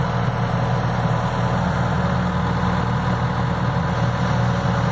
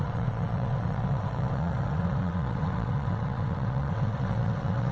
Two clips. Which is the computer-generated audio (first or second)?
second